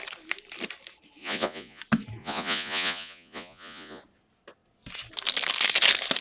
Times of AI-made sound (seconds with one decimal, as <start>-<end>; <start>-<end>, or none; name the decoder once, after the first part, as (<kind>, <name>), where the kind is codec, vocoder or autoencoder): 1.2-1.8 (vocoder, Vocos); 2.2-4.0